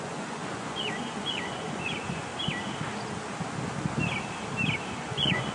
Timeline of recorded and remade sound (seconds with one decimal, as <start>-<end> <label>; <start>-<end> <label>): 0.0-2.3 remade; 2.3-4.8 recorded; 4.8-5.5 remade